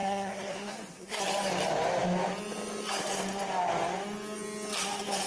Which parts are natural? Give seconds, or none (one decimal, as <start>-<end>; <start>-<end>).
1.2-5.3